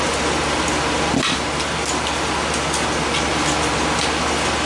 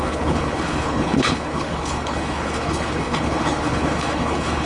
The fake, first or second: second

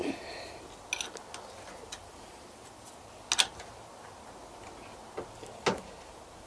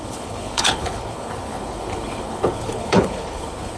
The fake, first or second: second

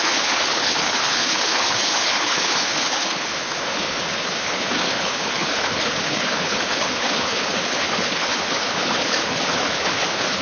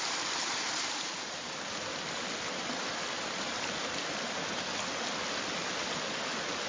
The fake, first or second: first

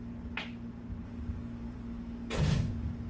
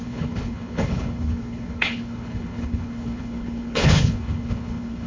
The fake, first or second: second